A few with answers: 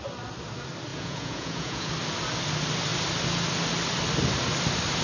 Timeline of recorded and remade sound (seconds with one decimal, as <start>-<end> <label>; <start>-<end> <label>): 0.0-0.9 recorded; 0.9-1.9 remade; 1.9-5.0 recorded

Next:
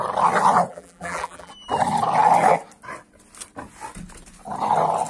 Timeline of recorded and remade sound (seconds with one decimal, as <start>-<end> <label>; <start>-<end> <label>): 0.0-0.7 recorded; 0.7-1.5 remade; 1.5-5.1 recorded

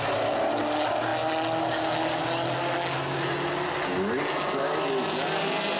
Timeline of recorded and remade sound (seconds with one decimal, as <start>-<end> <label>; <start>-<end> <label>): 0.0-5.8 recorded

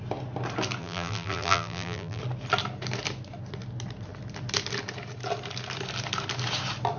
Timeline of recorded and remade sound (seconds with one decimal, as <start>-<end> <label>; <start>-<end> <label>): 0.0-0.8 recorded; 0.8-2.2 remade; 2.2-7.0 recorded

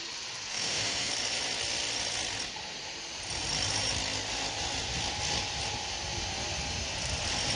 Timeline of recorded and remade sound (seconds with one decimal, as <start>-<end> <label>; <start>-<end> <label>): 0.0-0.5 recorded; 0.5-1.1 remade; 1.1-7.6 recorded

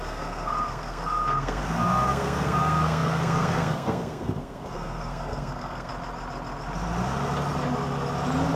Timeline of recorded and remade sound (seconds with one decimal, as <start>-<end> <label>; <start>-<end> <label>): 0.0-5.9 remade; 5.9-8.6 recorded